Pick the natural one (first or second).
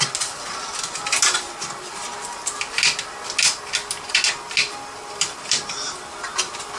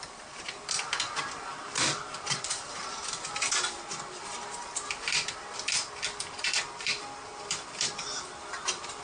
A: first